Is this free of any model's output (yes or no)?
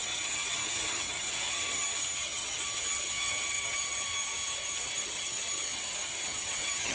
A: no